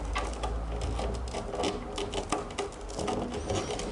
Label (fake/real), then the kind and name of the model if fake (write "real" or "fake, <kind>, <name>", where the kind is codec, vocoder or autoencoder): real